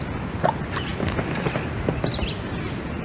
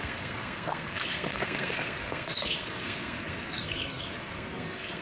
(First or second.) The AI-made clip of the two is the second